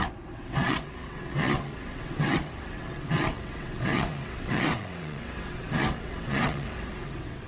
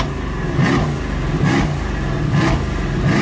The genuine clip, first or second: second